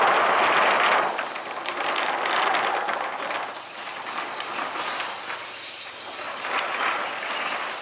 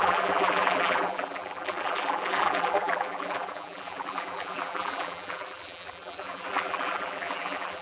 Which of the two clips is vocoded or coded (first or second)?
second